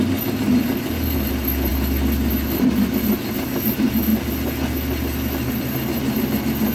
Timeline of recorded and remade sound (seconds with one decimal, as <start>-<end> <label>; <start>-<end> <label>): 0.0-6.7 recorded